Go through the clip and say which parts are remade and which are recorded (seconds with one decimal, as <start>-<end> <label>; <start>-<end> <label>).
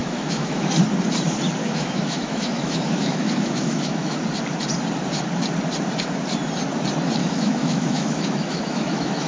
0.0-0.7 remade; 0.7-1.6 recorded; 1.6-4.2 remade; 4.2-7.2 recorded; 7.2-9.3 remade